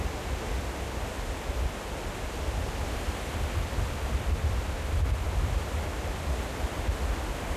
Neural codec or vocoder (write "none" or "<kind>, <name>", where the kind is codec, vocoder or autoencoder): none